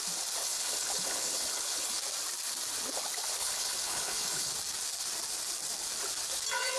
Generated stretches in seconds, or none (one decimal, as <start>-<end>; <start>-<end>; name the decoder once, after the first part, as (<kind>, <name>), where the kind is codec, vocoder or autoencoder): 0.4-2.0 (codec, HILCodec); 3.4-4.5